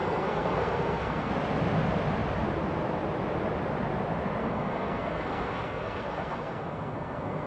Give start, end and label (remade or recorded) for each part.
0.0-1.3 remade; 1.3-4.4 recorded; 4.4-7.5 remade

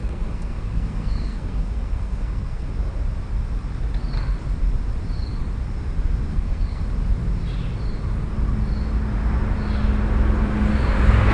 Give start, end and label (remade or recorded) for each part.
0.0-2.7 remade; 2.7-6.3 recorded; 6.3-6.8 remade; 6.8-11.3 recorded

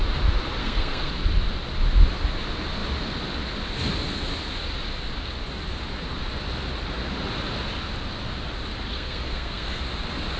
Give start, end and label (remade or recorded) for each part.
0.0-0.6 recorded; 0.6-1.1 remade; 1.1-8.9 recorded; 8.9-9.8 remade; 9.8-10.4 recorded

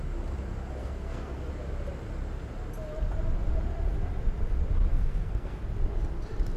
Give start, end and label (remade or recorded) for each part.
0.0-0.8 recorded; 0.8-1.5 remade; 1.5-4.9 recorded; 4.9-5.6 remade; 5.6-6.6 recorded

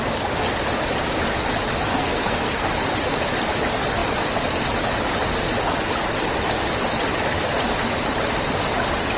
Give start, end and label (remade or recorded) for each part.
0.0-1.9 recorded; 1.9-2.7 remade; 2.7-9.2 recorded

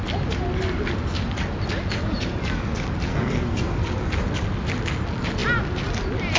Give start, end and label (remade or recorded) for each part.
0.0-3.1 recorded; 3.1-3.8 remade; 3.8-6.4 recorded